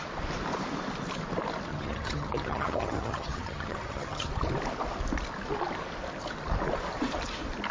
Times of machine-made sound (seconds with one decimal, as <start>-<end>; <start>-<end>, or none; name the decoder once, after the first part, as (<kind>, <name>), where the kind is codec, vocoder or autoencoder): 1.7-4.3 (vocoder, HiFi-GAN)